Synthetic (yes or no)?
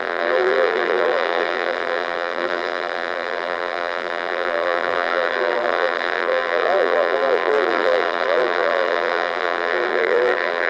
yes